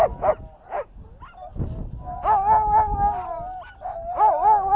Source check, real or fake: real